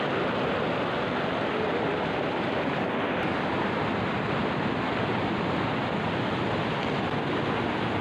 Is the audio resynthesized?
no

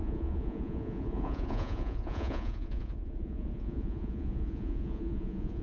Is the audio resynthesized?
yes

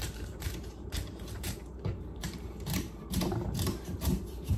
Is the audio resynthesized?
yes